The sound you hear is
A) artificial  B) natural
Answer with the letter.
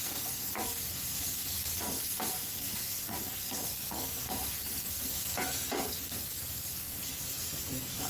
A